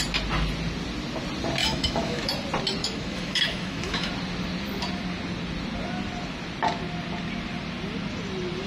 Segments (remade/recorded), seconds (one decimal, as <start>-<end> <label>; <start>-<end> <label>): 0.0-1.6 recorded; 1.6-2.3 remade; 2.3-2.8 recorded; 2.8-4.1 remade; 4.1-8.7 recorded